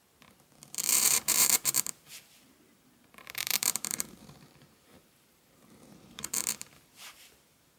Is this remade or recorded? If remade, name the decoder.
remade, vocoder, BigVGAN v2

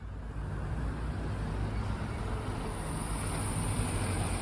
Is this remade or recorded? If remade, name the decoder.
recorded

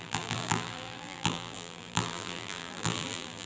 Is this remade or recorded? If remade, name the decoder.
remade, vocoder, BigVGAN v2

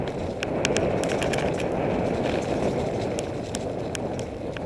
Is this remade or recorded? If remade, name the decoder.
recorded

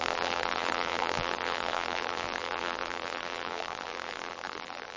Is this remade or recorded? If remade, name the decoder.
remade, vocoder, BigVGAN v2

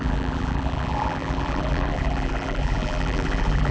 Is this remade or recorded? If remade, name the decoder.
remade, vocoder, BigVGAN v2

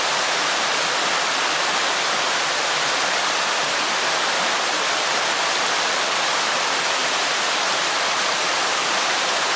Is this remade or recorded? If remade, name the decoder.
recorded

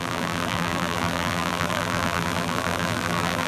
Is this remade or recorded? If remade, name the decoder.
remade, vocoder, BigVGAN v2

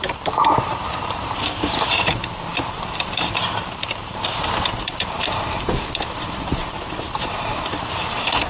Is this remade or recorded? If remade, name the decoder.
remade, vocoder, BigVGAN v2